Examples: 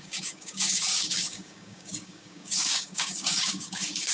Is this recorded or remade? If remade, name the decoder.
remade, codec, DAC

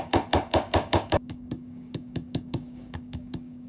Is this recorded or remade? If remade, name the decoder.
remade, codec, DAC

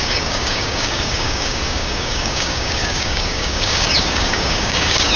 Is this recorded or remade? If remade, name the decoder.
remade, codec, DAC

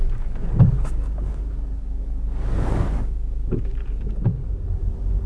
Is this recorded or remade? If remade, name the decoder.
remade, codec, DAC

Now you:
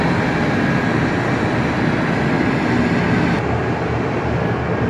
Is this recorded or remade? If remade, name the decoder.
recorded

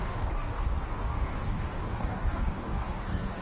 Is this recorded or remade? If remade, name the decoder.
remade, codec, DAC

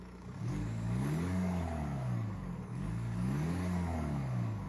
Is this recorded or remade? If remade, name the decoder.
remade, codec, DAC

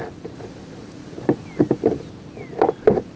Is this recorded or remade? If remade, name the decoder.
recorded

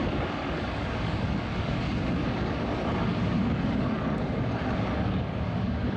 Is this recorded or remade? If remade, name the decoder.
remade, codec, DAC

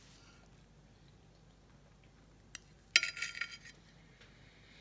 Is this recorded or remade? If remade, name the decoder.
recorded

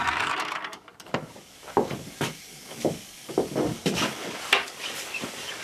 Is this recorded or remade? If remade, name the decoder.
remade, codec, DAC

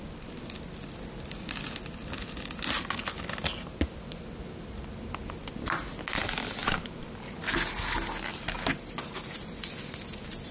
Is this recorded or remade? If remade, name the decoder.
recorded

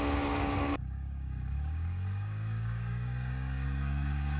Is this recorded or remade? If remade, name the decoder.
remade, codec, DAC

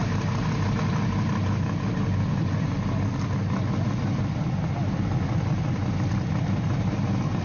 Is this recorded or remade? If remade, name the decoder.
recorded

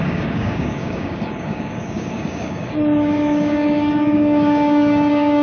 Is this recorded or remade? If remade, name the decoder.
remade, codec, DAC